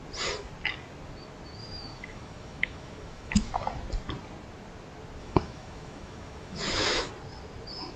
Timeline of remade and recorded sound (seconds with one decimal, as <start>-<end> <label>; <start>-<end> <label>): 0.0-1.6 recorded; 1.6-3.5 remade; 3.5-5.2 recorded; 5.2-7.1 remade; 7.1-8.0 recorded